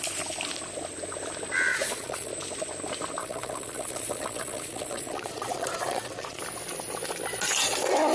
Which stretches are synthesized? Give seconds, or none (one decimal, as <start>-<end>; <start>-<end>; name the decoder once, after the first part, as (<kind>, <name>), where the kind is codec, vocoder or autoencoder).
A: 1.7-2.3 (vocoder, Vocos); 3.2-6.4